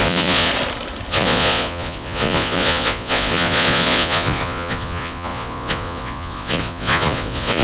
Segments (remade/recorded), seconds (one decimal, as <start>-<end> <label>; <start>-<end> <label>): 0.0-0.5 remade; 0.5-1.1 recorded; 1.1-7.6 remade